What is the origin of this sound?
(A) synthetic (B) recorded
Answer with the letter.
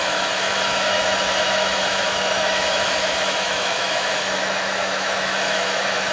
A